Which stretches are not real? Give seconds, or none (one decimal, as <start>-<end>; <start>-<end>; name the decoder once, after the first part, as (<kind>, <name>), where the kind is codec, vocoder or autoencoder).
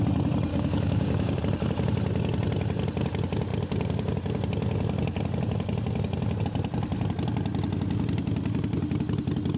0.5-1.4 (codec, DAC)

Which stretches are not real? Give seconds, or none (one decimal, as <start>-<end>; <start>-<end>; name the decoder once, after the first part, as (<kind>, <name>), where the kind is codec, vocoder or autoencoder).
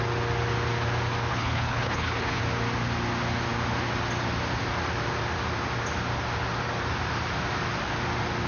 1.3-2.4 (codec, HILCodec)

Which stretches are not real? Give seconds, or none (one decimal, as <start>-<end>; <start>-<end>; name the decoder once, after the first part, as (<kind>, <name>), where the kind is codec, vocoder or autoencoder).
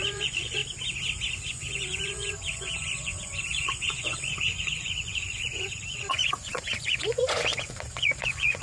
0.0-0.6 (vocoder, Vocos); 1.5-8.6